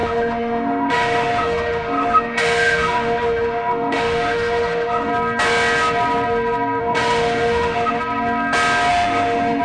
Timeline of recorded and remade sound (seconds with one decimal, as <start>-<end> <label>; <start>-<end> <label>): 0.0-5.1 remade; 5.1-6.8 recorded; 6.8-8.0 remade; 8.0-8.9 recorded; 8.9-9.6 remade

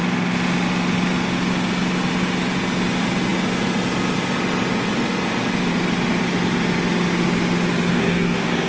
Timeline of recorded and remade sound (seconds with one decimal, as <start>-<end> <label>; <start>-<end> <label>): 0.0-7.9 recorded; 7.9-8.7 remade

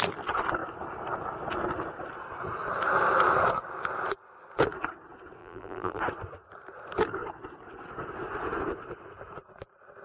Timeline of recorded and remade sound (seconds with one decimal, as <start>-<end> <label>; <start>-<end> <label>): 0.0-5.4 recorded; 5.4-6.0 remade; 6.0-10.0 recorded

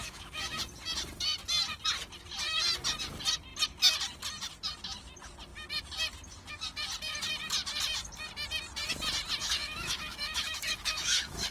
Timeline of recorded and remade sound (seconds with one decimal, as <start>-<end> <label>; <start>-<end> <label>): 0.0-0.6 remade; 0.6-9.4 recorded; 9.4-11.5 remade

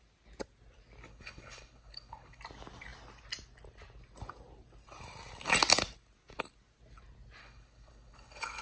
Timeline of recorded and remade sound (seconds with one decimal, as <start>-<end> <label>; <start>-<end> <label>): 0.0-1.1 recorded; 1.1-2.4 remade; 2.4-7.4 recorded; 7.4-8.6 remade

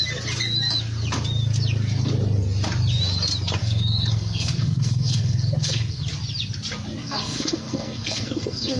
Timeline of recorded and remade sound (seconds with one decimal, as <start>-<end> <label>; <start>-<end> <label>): 0.0-3.6 recorded; 3.6-6.0 remade; 6.0-7.0 recorded; 7.0-8.8 remade

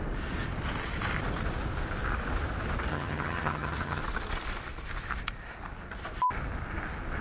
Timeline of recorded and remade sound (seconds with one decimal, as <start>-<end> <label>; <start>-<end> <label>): 0.0-2.9 recorded; 2.9-4.0 remade; 4.0-7.2 recorded

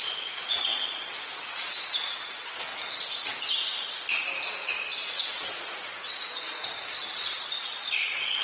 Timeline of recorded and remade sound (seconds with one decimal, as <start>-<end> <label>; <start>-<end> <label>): 0.0-2.7 remade; 2.7-4.9 recorded; 4.9-8.4 remade